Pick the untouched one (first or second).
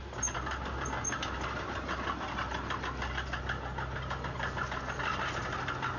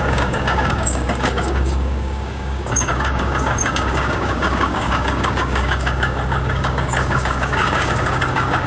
first